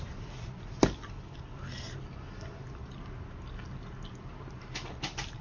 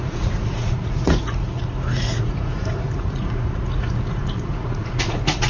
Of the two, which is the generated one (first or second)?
second